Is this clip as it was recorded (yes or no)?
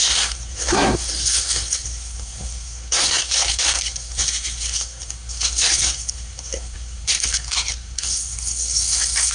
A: no